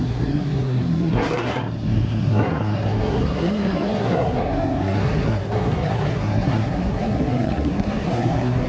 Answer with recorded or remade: remade